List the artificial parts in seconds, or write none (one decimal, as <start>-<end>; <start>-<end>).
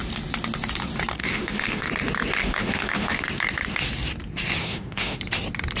1.2-1.9; 2.4-3.2; 4.6-5.2